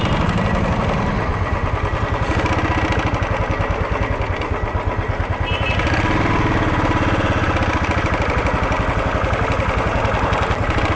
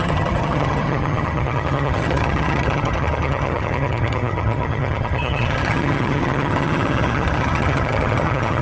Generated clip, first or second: second